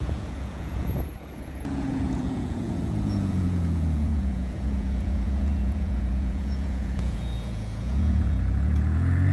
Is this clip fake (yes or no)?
yes